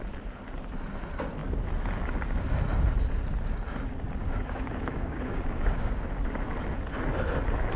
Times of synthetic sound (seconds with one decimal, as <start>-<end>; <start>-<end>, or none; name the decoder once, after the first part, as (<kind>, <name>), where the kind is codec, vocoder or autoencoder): 4.2-6.1 (codec, DAC)